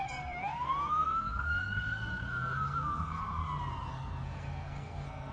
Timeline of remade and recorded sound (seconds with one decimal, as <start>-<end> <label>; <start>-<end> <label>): 0.0-3.4 remade; 3.4-3.9 recorded; 3.9-5.3 remade